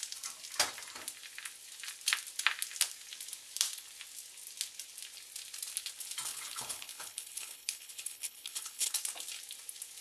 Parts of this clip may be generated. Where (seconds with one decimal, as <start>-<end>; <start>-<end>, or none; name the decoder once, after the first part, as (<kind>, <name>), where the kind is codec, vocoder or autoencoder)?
6.3-8.9 (codec, HILCodec)